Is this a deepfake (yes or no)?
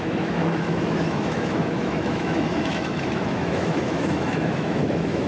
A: yes